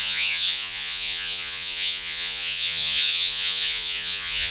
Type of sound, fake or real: fake